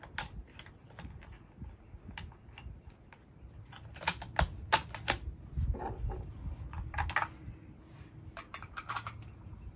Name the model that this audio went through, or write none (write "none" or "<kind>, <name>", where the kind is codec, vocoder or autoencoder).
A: none